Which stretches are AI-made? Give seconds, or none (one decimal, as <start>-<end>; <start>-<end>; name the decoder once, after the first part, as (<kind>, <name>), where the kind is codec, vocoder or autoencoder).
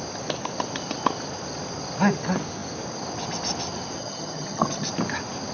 4.0-4.9 (vocoder, HiFi-GAN)